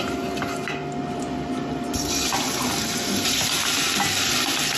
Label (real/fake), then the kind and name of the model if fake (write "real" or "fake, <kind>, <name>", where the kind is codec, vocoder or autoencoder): real